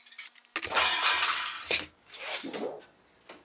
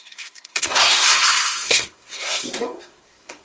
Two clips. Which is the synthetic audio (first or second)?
second